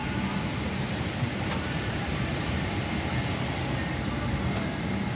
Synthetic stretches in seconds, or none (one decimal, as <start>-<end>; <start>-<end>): 0.0-3.1